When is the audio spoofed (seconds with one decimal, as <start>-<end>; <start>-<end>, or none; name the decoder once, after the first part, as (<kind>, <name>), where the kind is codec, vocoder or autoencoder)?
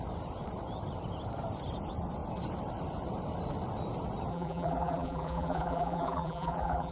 4.3-6.9 (vocoder, BigVGAN v2)